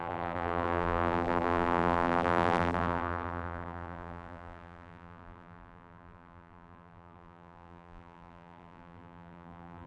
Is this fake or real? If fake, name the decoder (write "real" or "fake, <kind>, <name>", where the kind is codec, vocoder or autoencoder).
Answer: fake, vocoder, BigVGAN v2